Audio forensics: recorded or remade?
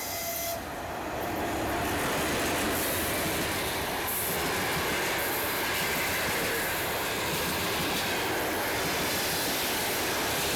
recorded